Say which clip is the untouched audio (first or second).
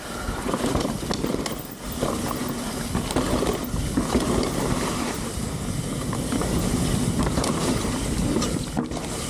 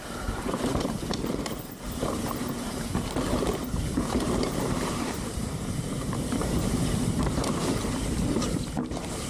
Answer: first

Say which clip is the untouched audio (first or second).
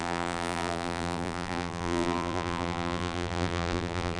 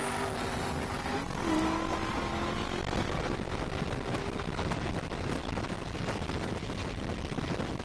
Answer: second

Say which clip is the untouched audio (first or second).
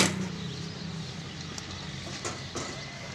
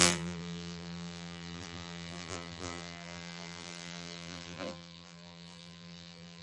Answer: first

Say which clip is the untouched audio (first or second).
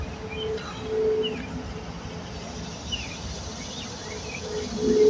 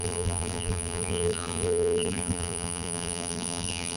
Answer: first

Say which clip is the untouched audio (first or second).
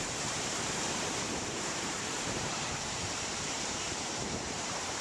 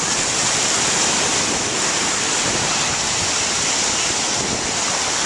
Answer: second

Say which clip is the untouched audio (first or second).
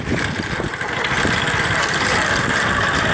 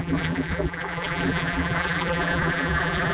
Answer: first